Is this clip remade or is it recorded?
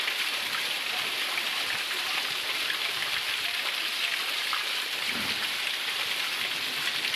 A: remade